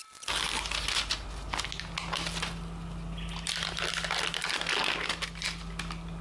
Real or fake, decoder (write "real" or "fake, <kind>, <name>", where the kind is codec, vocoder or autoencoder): real